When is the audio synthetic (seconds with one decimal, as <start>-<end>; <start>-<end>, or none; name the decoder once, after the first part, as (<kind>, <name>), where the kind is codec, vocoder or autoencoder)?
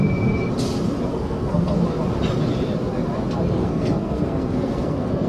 1.1-1.8 (codec, SNAC); 3.6-5.3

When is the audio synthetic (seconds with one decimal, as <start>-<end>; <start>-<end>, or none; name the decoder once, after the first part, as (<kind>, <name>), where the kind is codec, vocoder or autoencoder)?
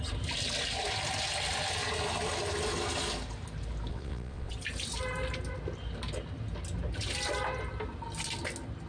3.9-4.5 (vocoder, WaveNeXt)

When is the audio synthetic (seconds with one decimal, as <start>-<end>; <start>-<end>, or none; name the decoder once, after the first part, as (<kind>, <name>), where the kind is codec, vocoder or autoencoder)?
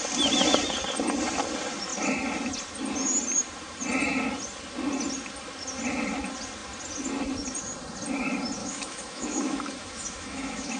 8.6-10.8 (autoencoder, DAC-VAE)